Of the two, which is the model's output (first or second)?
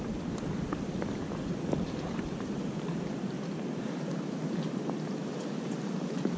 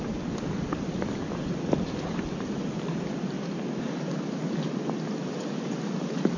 first